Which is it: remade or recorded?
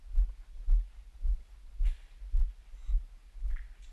recorded